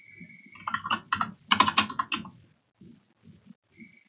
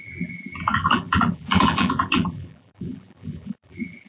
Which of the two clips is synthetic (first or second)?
second